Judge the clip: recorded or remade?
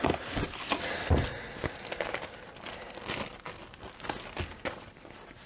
recorded